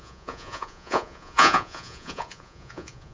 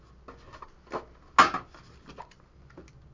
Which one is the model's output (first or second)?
first